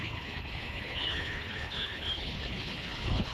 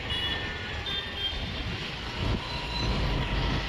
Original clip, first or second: second